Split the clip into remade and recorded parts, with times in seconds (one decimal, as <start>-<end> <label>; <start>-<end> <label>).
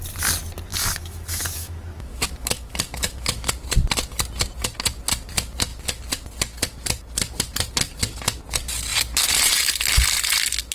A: 0.0-0.7 recorded; 0.7-3.5 remade; 3.5-10.7 recorded